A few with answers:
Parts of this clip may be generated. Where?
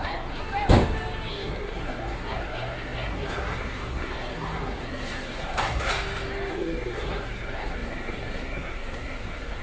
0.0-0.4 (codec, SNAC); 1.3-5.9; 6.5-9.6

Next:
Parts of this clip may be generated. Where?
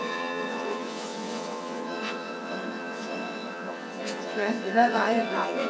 0.0-5.7 (vocoder, WaveNeXt)